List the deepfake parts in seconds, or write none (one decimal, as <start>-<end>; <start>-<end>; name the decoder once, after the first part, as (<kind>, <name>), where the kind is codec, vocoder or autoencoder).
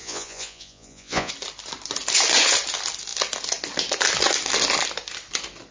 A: 0.0-1.3 (vocoder, Vocos)